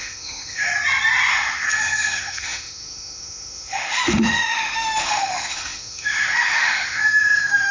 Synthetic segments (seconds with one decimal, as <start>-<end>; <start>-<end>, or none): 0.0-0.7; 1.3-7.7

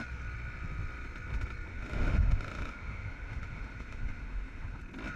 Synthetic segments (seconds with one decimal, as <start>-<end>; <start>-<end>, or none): 1.7-4.8

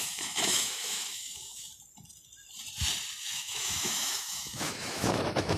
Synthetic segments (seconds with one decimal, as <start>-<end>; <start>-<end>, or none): 0.0-1.7; 3.2-5.6

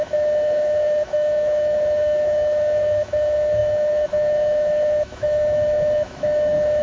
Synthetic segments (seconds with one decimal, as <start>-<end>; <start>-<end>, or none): 0.0-6.8